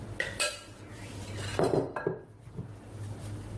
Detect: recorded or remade recorded